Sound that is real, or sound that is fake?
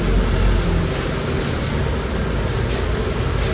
real